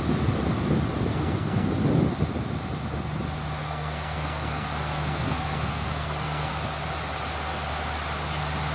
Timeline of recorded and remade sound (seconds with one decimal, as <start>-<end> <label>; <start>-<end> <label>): 0.0-1.1 recorded; 1.1-1.7 remade; 1.7-3.6 recorded; 3.6-6.5 remade; 6.5-8.7 recorded